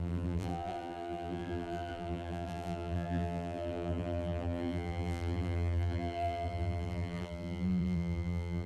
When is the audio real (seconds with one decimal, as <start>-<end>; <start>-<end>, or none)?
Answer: none